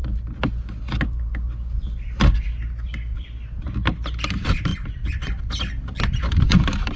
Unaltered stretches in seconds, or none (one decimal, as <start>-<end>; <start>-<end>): 0.0-4.2